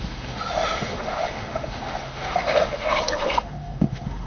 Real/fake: fake